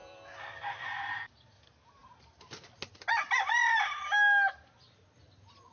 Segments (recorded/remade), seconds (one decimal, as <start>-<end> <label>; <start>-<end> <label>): 0.0-1.3 remade; 1.3-5.7 recorded